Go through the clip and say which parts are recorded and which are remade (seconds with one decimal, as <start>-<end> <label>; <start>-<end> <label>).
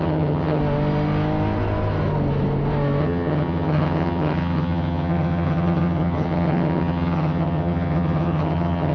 0.0-0.6 remade; 0.6-3.0 recorded; 3.0-8.9 remade